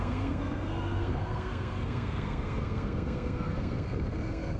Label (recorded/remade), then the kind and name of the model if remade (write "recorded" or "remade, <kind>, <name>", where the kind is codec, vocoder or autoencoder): remade, codec, SNAC